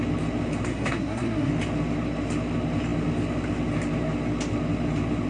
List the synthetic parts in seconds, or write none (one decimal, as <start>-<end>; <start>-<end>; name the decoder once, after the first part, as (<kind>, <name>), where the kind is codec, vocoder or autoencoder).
0.7-1.5 (codec, SNAC)